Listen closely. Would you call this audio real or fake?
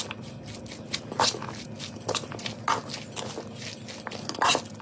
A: real